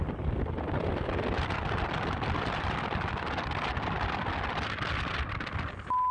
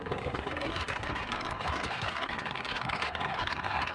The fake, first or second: second